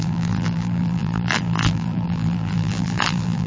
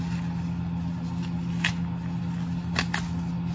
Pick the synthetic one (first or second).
first